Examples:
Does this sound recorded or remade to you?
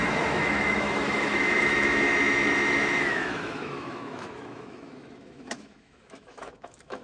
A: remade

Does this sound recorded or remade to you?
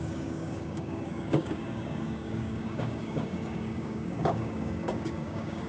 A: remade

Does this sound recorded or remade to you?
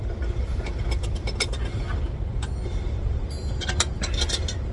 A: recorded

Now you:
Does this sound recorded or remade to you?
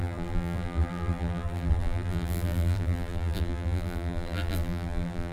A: remade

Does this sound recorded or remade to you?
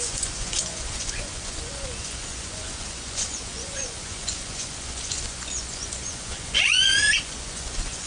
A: remade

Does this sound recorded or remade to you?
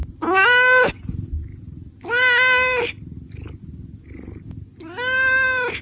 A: recorded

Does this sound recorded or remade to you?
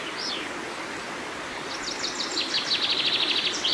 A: recorded